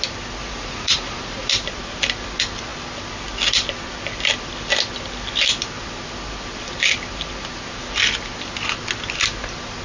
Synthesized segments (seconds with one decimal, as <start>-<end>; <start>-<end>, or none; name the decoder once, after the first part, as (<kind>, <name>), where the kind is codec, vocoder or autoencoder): 0.4-1.5 (vocoder, Vocos)